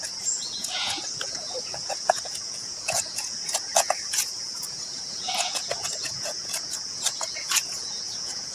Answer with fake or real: fake